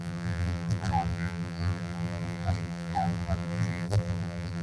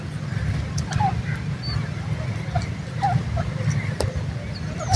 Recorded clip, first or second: second